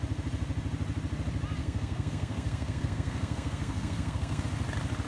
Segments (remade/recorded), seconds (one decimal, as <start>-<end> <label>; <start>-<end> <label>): 0.0-1.6 recorded; 1.6-4.4 remade; 4.4-5.1 recorded